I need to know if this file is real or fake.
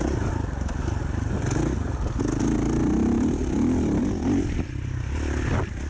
real